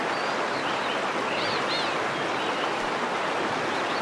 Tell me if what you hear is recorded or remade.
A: recorded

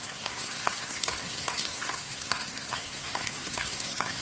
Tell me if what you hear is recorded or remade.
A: remade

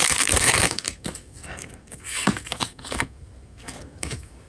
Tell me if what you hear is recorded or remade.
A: remade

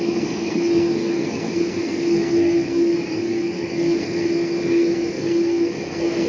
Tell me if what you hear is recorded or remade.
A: remade